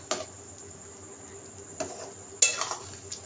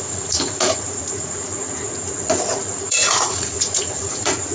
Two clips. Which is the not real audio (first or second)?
second